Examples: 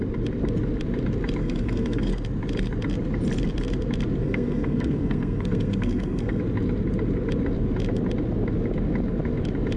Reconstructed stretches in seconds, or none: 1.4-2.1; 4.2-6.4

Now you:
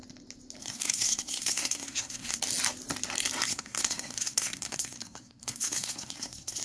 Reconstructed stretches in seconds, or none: 0.6-2.4; 3.5-6.6

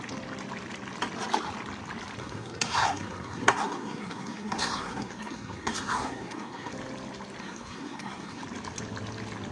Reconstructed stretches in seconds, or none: 2.2-6.7; 7.4-8.4

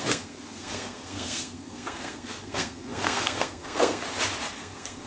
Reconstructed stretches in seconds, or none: 0.0-4.0; 4.6-5.1

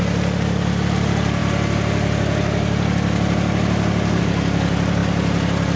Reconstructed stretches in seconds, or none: none